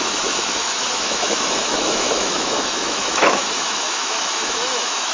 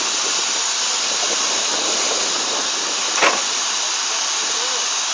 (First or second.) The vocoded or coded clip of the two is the first